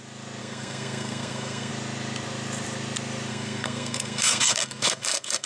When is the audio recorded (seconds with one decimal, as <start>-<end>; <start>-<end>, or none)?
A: 0.0-0.4; 1.7-3.3